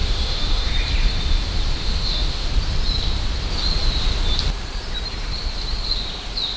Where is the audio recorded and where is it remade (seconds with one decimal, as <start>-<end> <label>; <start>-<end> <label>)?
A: 0.0-0.7 remade; 0.7-1.8 recorded; 1.8-2.5 remade; 2.5-6.6 recorded